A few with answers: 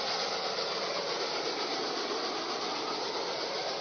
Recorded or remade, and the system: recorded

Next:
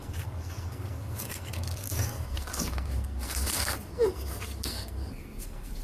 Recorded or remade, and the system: remade, codec, SNAC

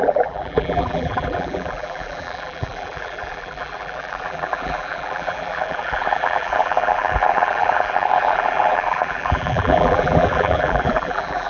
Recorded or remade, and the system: remade, vocoder, BigVGAN v2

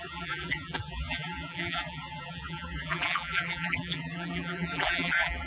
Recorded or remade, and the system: remade, vocoder, BigVGAN v2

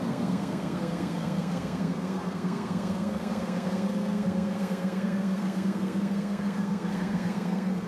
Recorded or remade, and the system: remade, codec, SNAC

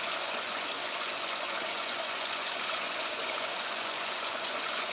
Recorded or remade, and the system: remade, vocoder, Vocos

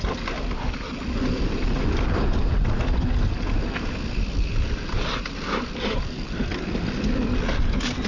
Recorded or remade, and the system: recorded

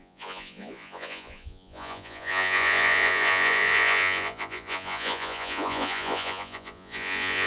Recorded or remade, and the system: remade, vocoder, Vocos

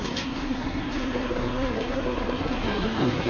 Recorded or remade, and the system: remade, codec, SNAC